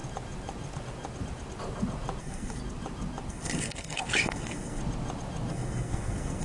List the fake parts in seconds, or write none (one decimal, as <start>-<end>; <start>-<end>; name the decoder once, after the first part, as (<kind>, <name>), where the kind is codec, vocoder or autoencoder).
2.2-2.6 (codec, SNAC); 3.3-4.8; 5.5-6.4